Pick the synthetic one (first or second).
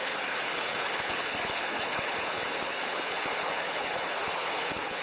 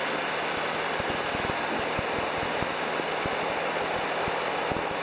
first